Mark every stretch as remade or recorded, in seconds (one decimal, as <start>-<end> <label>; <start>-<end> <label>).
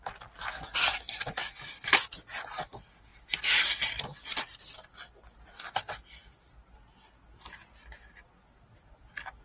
0.0-9.4 recorded